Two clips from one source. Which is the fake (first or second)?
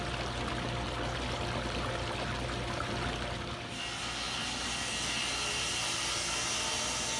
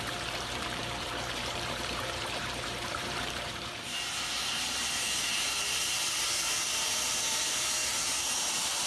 second